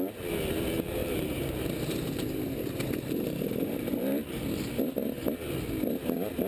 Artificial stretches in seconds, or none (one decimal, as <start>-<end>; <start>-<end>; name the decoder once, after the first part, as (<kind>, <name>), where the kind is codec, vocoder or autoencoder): 1.0-4.3 (vocoder, BigVGAN v2)